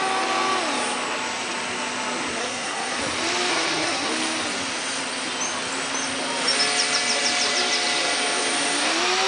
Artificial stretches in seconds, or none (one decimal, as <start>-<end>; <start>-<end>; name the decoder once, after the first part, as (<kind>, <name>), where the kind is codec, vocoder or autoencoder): 2.4-3.0 (codec, SNAC); 3.5-4.1